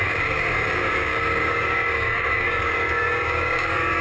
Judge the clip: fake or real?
fake